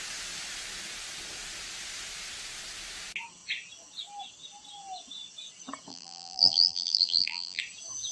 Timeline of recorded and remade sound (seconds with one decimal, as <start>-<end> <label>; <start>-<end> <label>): 0.0-5.9 recorded; 5.9-7.6 remade; 7.6-8.1 recorded